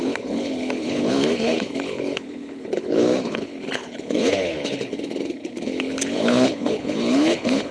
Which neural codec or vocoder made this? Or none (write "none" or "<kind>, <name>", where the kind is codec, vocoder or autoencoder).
codec, HILCodec